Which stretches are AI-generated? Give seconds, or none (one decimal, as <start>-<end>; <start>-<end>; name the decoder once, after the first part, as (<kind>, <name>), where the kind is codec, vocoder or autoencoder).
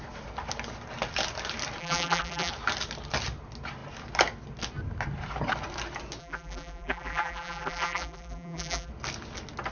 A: 1.8-2.5 (vocoder, BigVGAN v2); 6.2-8.9